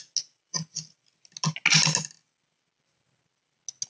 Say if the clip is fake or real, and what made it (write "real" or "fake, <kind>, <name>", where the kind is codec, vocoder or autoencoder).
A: real